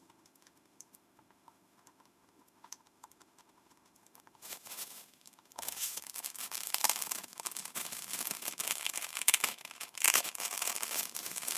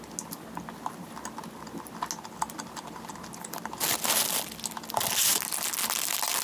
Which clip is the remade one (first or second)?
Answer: first